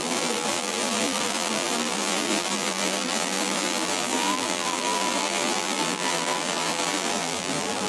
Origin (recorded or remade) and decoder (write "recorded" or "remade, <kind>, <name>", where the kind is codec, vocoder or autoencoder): remade, vocoder, BigVGAN v2